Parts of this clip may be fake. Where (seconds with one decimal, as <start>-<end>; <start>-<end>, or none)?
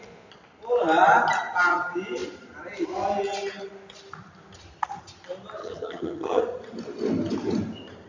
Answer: 5.6-6.4